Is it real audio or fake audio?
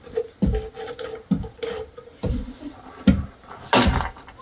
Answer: real